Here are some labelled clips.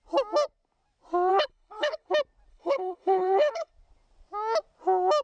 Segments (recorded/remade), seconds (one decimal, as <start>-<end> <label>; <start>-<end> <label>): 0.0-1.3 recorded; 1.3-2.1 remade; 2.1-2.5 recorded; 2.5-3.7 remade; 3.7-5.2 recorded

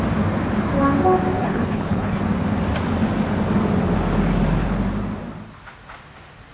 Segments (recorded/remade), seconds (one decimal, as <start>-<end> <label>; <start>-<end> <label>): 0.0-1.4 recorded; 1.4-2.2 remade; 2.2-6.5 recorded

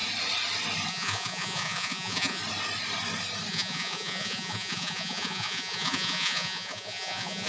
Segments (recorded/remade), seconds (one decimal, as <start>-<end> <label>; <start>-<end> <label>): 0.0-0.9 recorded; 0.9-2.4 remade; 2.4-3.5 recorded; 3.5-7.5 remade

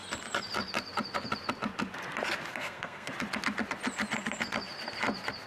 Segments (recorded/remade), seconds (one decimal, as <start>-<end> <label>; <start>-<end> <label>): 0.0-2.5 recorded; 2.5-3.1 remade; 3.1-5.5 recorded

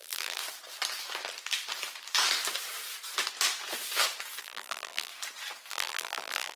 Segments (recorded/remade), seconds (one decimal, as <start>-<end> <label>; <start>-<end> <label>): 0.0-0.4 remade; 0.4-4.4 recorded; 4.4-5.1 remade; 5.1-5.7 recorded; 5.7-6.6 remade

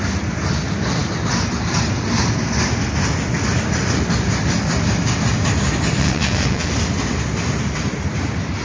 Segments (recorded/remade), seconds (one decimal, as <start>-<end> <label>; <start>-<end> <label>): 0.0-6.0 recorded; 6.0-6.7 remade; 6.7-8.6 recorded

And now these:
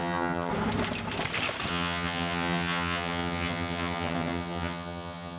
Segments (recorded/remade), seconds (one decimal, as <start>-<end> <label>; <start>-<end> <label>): 0.0-0.5 remade; 0.5-1.7 recorded; 1.7-5.4 remade

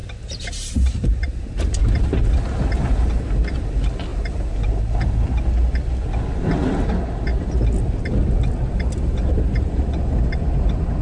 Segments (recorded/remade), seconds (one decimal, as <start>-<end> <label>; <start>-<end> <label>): 0.0-1.8 remade; 1.8-4.1 recorded; 4.1-5.1 remade; 5.1-11.0 recorded